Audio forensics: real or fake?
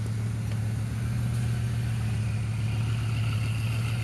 real